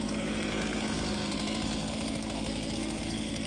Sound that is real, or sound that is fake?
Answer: fake